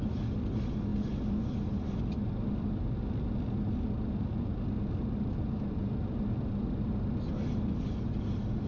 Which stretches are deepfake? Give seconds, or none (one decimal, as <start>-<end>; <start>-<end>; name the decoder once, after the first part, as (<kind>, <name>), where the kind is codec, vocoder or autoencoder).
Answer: none